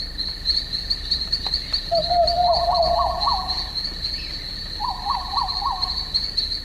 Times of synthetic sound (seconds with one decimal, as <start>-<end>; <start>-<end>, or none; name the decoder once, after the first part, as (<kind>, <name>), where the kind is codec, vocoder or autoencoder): 2.4-3.7 (vocoder, Vocos)